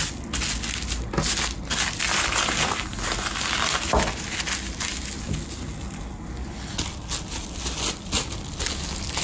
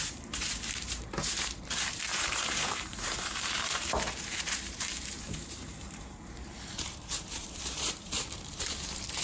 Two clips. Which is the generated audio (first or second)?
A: second